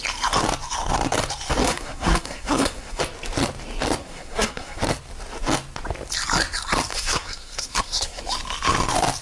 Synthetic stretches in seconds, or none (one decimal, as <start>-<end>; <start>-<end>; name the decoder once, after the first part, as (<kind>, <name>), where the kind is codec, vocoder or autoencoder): 1.6-3.0 (codec, SNAC); 4.0-4.8; 6.9-8.2